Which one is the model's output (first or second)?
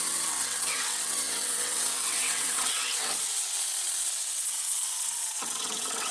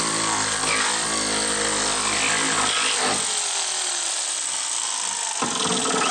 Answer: first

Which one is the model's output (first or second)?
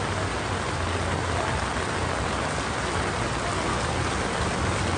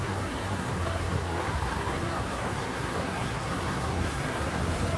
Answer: second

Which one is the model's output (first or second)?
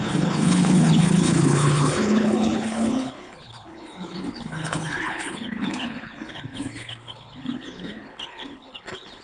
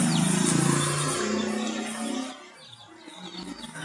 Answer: first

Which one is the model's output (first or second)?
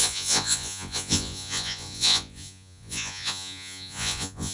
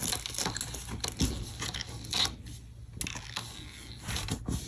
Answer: first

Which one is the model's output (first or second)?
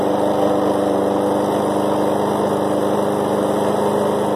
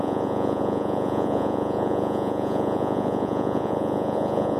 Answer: second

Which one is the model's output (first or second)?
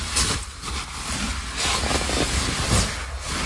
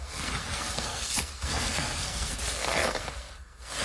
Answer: second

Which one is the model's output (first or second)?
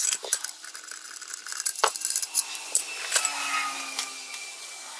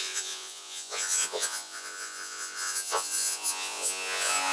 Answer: second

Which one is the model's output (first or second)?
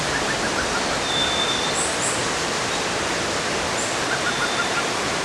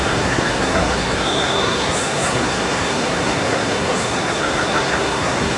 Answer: second